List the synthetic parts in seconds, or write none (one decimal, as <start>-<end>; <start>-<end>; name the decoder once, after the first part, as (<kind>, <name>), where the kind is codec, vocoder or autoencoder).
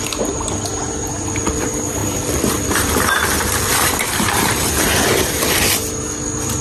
2.0-6.0 (vocoder, BigVGAN v2)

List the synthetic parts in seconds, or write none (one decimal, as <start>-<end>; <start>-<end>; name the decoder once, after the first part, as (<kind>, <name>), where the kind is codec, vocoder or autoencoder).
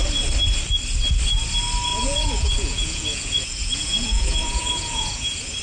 1.9-5.6 (vocoder, Vocos)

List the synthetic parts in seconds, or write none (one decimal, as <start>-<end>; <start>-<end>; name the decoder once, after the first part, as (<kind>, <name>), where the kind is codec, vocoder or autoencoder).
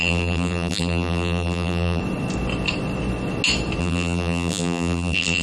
0.0-2.0 (vocoder, BigVGAN v2); 3.8-5.4